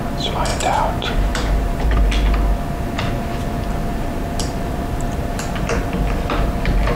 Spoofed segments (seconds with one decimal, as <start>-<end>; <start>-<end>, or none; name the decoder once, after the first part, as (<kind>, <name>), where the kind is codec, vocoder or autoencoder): 0.5-2.0 (vocoder, BigVGAN v2); 3.9-7.0